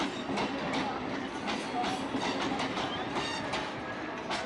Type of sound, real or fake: real